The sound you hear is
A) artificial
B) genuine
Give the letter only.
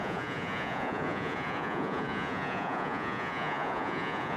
A